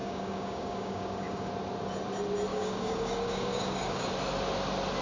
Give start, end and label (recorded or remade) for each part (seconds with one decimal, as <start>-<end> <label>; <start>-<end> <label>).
0.0-1.5 remade; 1.5-2.5 recorded; 2.5-4.0 remade; 4.0-5.0 recorded